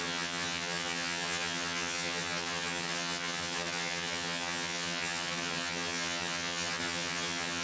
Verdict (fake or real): fake